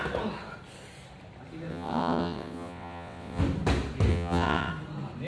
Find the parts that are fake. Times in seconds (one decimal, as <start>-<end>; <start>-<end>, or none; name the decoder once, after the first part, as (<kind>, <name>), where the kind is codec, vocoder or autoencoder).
1.7-3.4 (vocoder, WaveNeXt); 4.1-4.7